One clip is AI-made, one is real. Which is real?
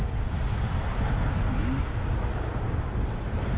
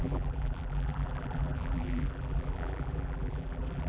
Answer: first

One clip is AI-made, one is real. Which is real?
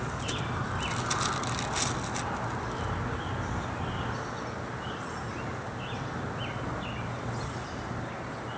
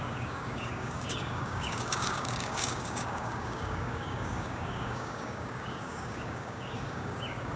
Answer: first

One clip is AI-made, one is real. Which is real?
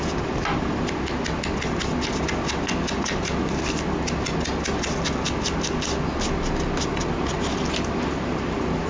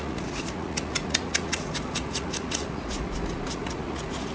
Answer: first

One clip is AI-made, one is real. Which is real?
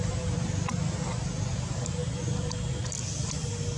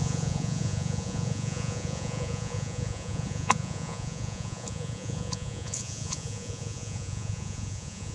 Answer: first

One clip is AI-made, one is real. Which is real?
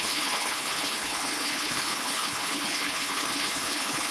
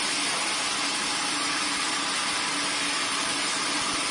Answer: second